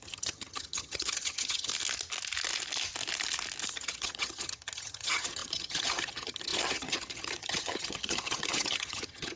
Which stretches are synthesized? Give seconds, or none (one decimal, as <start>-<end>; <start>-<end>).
0.0-1.7; 3.7-9.4